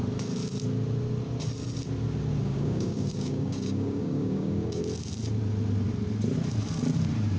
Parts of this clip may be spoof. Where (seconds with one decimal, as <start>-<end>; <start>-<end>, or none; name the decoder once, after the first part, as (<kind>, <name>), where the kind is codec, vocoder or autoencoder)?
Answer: 2.4-4.8 (codec, DAC)